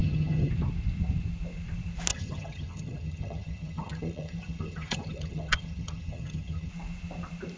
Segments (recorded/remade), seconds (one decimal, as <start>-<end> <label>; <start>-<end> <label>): 0.0-0.5 remade; 0.5-2.1 recorded; 2.1-6.7 remade; 6.7-7.6 recorded